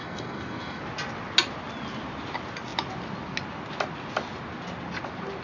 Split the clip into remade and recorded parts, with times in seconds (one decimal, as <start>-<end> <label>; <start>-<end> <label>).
0.0-0.8 remade; 0.8-5.4 recorded